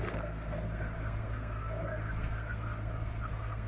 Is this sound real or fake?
fake